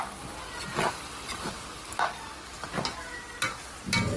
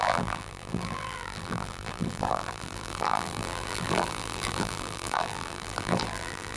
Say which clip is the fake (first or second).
second